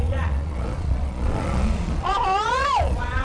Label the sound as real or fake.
fake